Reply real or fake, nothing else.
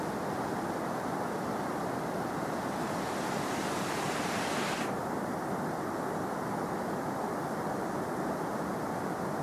real